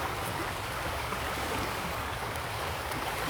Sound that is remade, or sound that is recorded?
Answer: remade